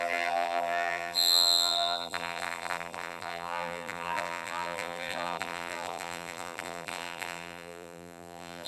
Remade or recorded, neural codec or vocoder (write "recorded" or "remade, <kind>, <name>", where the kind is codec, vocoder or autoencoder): remade, vocoder, BigVGAN v2